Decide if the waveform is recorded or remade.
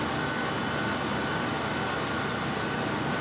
recorded